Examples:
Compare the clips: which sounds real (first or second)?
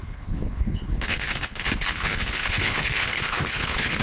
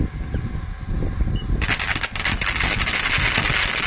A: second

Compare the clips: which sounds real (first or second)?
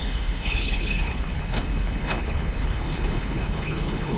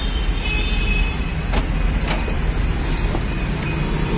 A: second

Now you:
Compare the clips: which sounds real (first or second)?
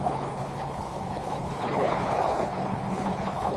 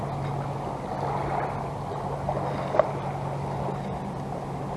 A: second